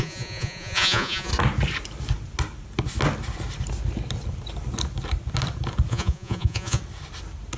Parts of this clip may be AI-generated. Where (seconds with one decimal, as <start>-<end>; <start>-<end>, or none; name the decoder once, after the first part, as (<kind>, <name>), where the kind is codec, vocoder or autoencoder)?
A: 0.0-1.3 (vocoder, Vocos); 5.9-6.8